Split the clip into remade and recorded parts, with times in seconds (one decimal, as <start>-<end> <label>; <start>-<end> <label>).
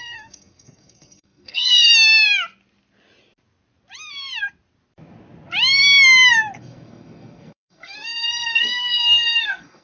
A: 0.0-1.9 remade; 1.9-6.6 recorded; 6.6-9.8 remade